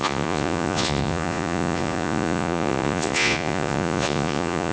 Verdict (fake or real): fake